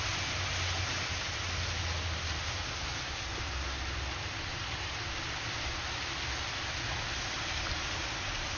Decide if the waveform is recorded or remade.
recorded